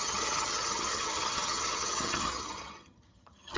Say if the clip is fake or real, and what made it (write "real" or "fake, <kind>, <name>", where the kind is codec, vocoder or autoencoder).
fake, vocoder, HiFi-GAN